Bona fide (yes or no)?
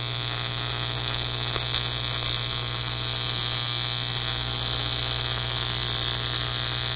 no